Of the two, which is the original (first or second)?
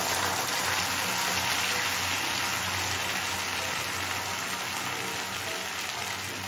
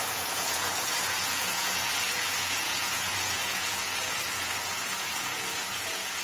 first